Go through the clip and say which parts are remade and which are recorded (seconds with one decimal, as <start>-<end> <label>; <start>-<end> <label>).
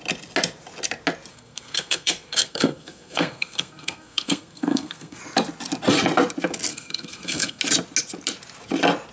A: 0.0-1.3 recorded; 1.3-5.2 remade; 5.2-6.7 recorded; 6.7-7.6 remade; 7.6-9.1 recorded